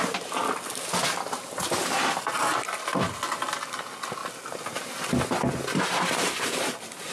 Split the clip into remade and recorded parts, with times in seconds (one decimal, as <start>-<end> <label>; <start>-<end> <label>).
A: 0.0-7.1 recorded

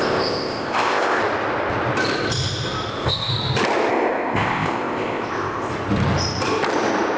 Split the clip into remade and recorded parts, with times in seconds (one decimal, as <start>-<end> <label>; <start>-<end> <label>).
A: 0.0-1.2 remade; 1.2-2.9 recorded; 2.9-3.3 remade; 3.3-3.9 recorded; 3.9-5.7 remade; 5.7-7.2 recorded

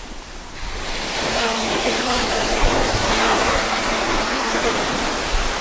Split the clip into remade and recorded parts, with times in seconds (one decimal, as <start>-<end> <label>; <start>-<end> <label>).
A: 0.0-1.3 recorded; 1.3-4.7 remade; 4.7-5.6 recorded

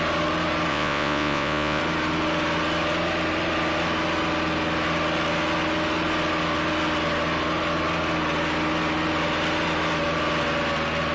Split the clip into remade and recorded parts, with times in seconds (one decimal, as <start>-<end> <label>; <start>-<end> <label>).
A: 0.0-0.7 recorded; 0.7-1.8 remade; 1.8-11.1 recorded

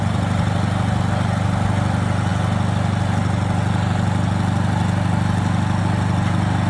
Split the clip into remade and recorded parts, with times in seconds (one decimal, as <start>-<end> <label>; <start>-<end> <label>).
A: 0.0-6.7 recorded

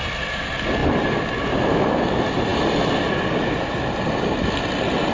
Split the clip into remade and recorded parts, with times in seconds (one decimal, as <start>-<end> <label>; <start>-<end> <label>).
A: 0.0-5.1 recorded